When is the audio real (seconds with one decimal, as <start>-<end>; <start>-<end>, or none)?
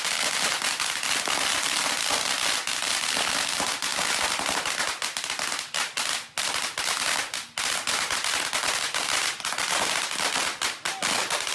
0.0-11.5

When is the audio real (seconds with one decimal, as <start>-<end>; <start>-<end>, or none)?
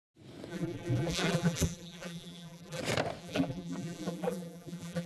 0.0-0.5; 2.8-3.2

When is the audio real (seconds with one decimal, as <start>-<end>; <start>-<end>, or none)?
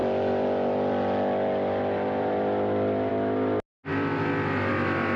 3.1-5.2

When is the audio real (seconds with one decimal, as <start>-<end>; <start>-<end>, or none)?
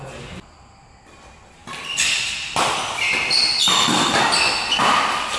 0.0-5.4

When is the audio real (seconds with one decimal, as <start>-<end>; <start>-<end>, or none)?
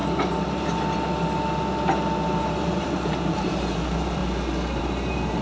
0.0-2.4; 4.2-4.8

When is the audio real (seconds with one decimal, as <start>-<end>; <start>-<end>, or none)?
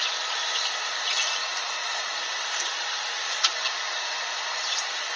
none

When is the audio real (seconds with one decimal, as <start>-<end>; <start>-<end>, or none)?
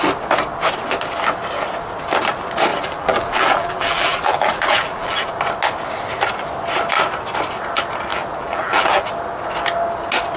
0.0-2.7; 5.4-8.1; 9.1-10.4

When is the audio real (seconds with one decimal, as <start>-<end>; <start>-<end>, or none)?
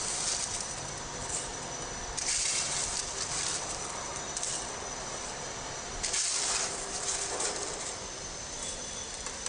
1.5-2.3; 4.1-5.0